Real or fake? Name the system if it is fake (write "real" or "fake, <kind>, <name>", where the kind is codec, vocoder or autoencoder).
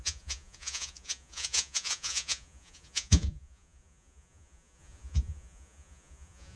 fake, vocoder, Vocos